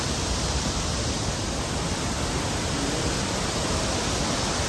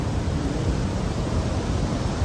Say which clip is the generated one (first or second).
second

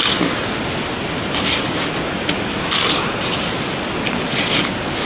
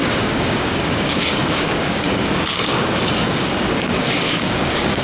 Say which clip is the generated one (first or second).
second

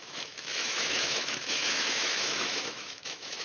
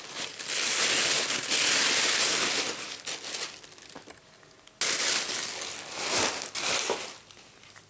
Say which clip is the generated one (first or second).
first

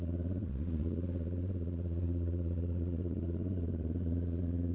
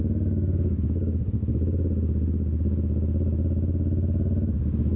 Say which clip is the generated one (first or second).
first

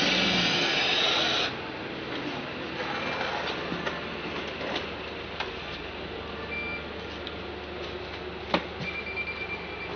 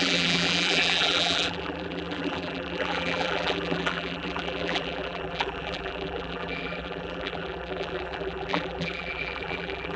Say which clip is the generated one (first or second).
second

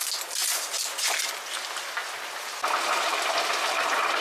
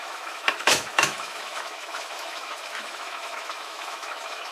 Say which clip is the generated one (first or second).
second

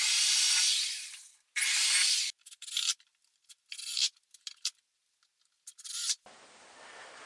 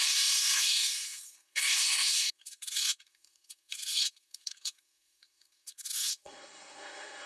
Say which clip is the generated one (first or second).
second